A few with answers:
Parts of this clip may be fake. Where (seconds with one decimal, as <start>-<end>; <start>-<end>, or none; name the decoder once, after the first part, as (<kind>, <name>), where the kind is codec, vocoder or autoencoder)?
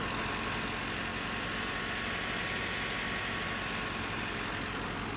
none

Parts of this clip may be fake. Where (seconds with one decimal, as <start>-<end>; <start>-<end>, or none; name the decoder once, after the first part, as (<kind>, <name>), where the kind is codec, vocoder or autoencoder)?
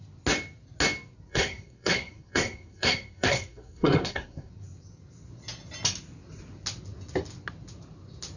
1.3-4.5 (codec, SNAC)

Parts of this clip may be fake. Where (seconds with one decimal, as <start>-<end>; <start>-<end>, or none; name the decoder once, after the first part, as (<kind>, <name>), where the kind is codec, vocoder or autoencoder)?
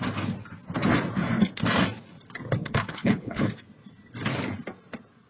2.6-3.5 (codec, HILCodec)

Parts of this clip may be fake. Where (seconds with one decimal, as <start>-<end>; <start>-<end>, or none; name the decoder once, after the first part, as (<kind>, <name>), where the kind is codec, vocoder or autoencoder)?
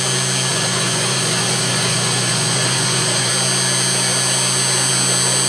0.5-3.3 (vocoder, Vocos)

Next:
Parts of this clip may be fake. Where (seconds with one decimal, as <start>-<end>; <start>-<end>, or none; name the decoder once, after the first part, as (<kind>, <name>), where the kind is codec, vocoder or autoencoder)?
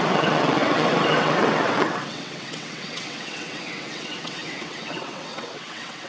0.0-6.1 (vocoder, WaveNeXt)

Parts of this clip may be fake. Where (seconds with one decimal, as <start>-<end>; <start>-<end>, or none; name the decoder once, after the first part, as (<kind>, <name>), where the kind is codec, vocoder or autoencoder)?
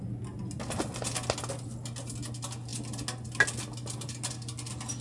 none